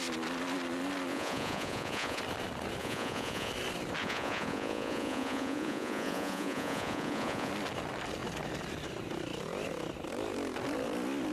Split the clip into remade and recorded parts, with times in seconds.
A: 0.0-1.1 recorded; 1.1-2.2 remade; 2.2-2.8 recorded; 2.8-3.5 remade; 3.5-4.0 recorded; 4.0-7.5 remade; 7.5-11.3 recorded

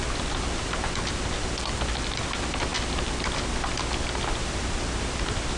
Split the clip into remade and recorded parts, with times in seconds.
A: 0.0-2.7 remade; 2.7-4.1 recorded; 4.1-5.6 remade

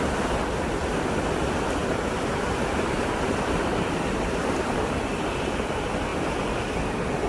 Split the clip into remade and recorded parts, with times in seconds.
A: 0.0-1.8 recorded; 1.8-4.5 remade; 4.5-7.3 recorded

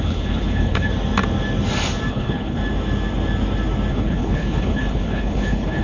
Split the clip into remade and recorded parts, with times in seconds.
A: 0.0-0.9 remade; 0.9-2.1 recorded; 2.1-2.6 remade; 2.6-3.9 recorded; 3.9-5.8 remade